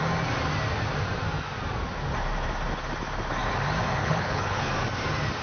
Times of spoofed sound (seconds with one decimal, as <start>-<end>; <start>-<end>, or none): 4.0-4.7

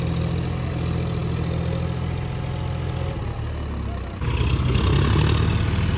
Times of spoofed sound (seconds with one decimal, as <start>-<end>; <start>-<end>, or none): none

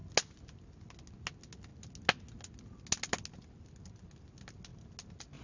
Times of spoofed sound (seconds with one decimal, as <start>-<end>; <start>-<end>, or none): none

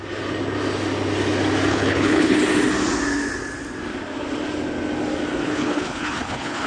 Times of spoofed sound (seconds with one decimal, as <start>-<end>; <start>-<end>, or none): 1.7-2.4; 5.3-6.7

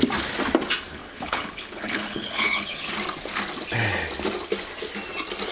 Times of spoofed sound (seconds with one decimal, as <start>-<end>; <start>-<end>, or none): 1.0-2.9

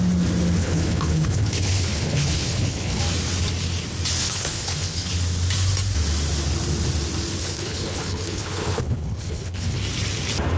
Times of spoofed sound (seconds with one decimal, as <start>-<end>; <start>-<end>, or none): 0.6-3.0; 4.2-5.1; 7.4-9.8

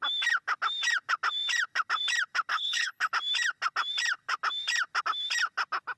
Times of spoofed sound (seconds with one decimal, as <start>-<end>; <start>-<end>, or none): 2.5-3.1